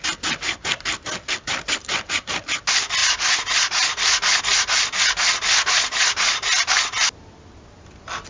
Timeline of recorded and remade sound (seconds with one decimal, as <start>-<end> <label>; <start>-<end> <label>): 0.0-8.3 recorded

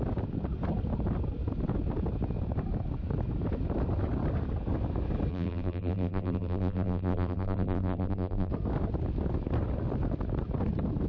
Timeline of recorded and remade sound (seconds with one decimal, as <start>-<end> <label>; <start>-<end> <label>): 0.0-5.3 recorded; 5.3-8.5 remade; 8.5-11.1 recorded

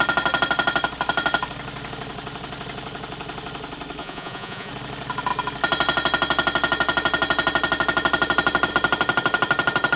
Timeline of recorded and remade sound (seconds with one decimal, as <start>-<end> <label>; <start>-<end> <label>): 0.0-4.0 recorded; 4.0-4.7 remade; 4.7-10.0 recorded

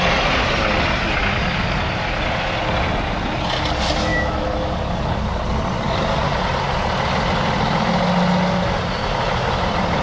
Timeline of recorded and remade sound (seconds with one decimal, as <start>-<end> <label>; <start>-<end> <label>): 0.0-4.1 recorded; 4.1-4.7 remade; 4.7-10.0 recorded

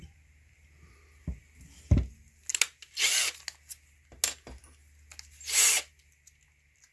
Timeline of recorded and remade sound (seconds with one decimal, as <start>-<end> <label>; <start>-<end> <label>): 0.0-6.9 recorded